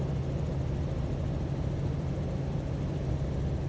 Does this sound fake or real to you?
real